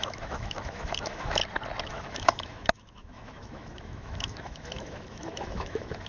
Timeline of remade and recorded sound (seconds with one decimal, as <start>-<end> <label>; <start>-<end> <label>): 0.0-1.4 remade; 1.4-1.9 recorded; 1.9-6.1 remade